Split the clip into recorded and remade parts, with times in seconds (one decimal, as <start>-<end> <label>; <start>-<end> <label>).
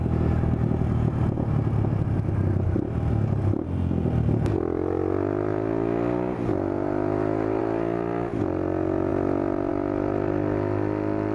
0.0-11.3 recorded